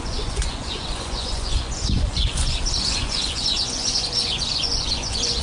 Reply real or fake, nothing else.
fake